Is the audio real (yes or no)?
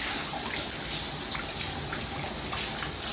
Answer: yes